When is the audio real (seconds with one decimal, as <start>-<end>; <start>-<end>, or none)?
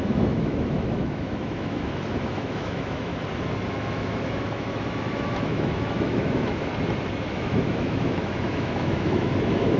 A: 3.1-3.7; 6.7-7.3